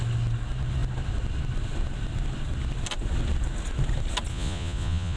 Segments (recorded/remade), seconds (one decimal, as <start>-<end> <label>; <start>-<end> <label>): 0.0-4.3 recorded; 4.3-5.2 remade